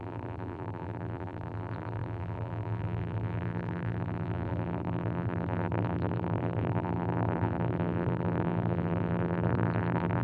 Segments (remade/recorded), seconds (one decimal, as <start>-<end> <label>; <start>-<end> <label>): 0.0-10.2 remade